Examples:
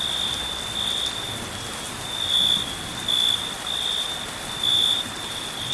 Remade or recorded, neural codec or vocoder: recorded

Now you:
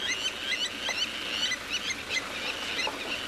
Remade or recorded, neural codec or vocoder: recorded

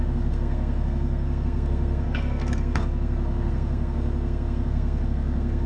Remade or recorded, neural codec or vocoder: remade, codec, SNAC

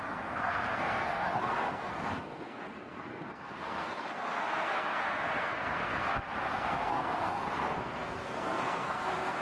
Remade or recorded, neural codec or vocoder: remade, codec, SNAC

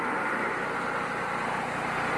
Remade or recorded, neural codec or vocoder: recorded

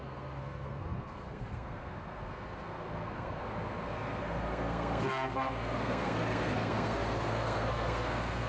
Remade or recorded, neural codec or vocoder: remade, codec, SNAC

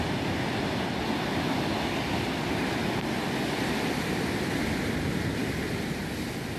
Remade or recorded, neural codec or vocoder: recorded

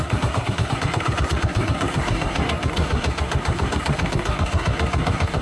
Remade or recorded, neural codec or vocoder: remade, codec, SNAC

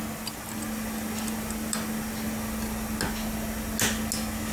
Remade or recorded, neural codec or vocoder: recorded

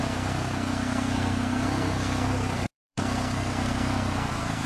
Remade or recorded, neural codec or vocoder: remade, codec, SNAC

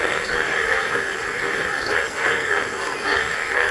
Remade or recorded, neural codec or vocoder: remade, codec, SNAC